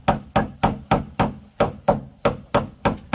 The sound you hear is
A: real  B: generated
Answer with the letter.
A